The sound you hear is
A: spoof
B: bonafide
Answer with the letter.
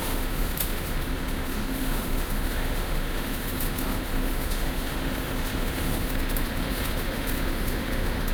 A